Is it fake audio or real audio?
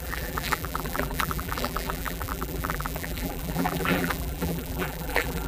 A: fake